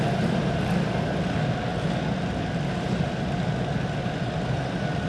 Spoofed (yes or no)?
no